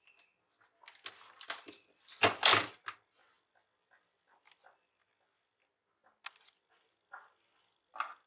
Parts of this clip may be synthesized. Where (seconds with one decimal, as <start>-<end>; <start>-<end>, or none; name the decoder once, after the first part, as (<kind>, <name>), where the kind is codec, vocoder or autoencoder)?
none